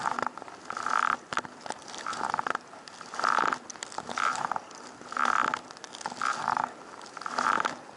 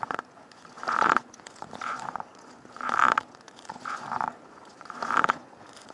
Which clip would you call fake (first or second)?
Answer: second